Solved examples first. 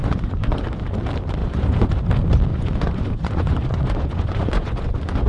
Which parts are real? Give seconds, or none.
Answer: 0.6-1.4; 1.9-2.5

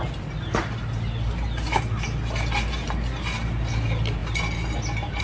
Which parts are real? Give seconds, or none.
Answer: 0.0-5.2